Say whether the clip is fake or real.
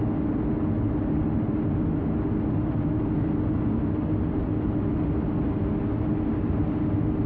real